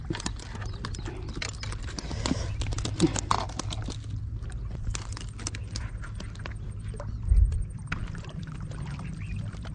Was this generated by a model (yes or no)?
no